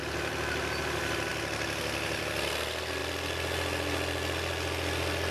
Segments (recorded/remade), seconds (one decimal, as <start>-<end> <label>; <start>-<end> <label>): 0.0-5.3 recorded